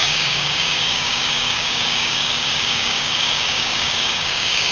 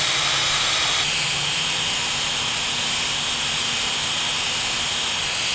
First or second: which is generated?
first